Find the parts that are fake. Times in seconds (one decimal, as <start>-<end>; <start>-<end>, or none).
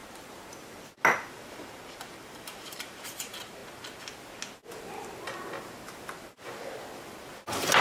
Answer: 1.3-3.6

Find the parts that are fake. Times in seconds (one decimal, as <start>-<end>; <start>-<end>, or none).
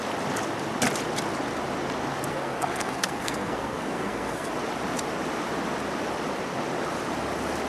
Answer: 2.3-4.5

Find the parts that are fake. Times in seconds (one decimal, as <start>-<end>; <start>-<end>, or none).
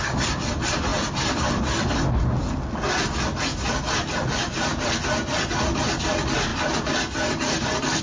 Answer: none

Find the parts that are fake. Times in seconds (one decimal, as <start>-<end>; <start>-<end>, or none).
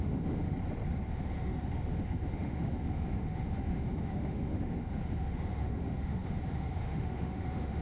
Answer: 0.0-0.5; 1.1-7.8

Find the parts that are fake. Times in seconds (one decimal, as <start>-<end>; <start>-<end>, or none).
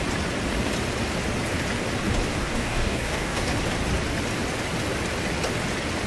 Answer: 2.3-3.5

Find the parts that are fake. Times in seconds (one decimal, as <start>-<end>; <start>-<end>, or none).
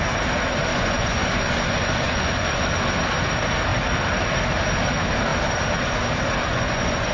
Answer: 0.7-2.7; 6.4-7.1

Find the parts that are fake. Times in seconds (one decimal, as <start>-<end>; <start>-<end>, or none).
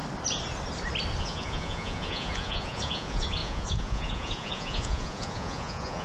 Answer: 1.2-6.0